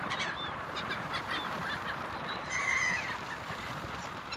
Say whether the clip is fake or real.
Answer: fake